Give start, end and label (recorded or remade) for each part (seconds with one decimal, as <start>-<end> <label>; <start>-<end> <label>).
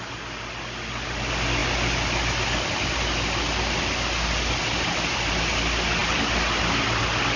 0.0-7.4 recorded